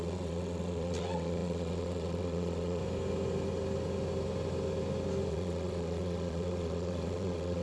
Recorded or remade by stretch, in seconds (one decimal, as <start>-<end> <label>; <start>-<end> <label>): 0.0-2.8 remade; 2.8-5.3 recorded; 5.3-7.6 remade

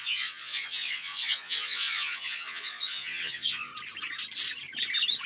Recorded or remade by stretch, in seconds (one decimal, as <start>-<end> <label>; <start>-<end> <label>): 0.0-3.7 remade; 3.7-5.3 recorded

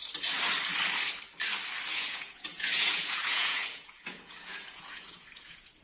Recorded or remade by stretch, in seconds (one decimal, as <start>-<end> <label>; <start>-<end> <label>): 0.0-1.9 recorded; 1.9-5.8 remade

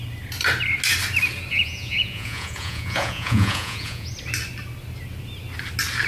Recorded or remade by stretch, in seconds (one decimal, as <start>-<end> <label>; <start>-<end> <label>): 0.0-1.5 recorded; 1.5-4.1 remade; 4.1-6.1 recorded

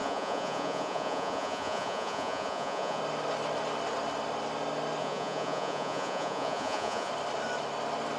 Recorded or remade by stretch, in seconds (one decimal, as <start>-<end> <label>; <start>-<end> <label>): 0.0-3.0 remade; 3.0-5.0 recorded; 5.0-7.1 remade; 7.1-8.2 recorded

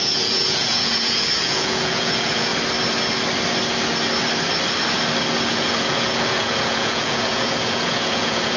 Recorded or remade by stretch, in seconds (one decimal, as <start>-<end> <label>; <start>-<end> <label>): 0.0-2.5 remade; 2.5-5.5 recorded; 5.5-8.6 remade

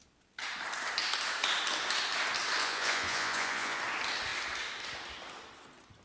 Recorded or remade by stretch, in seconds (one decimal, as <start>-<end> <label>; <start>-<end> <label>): 0.0-2.6 recorded; 2.6-3.8 remade; 3.8-6.0 recorded

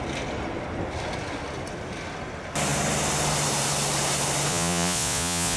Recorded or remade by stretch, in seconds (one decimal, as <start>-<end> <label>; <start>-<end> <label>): 0.0-4.5 recorded; 4.5-5.6 remade